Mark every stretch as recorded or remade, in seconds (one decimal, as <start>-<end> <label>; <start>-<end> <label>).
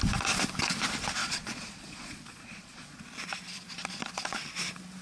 0.0-1.2 recorded; 1.2-3.0 remade; 3.0-5.0 recorded